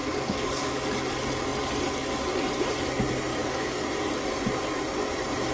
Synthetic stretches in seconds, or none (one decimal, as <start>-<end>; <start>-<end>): 0.0-0.8; 3.3-4.1